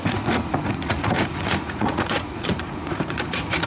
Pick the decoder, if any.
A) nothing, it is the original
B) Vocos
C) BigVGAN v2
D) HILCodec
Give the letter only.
B